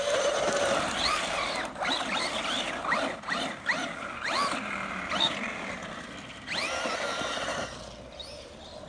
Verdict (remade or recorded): recorded